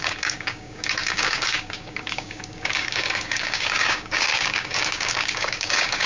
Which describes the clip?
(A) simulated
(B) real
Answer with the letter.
A